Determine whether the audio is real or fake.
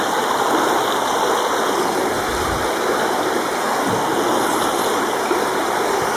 real